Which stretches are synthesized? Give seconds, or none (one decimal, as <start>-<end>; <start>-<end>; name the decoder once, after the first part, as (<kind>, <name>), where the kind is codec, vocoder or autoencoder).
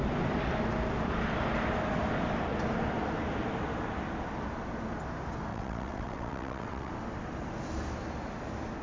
5.5-6.9 (vocoder, WaveNeXt)